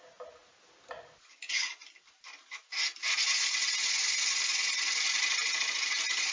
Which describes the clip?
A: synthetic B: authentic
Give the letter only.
B